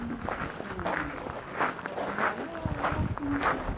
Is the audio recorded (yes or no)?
yes